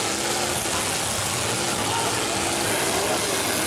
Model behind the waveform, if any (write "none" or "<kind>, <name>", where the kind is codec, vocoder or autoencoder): none